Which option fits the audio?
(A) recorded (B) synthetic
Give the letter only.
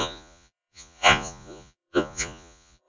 B